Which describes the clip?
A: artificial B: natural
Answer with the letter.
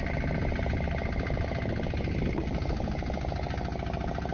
B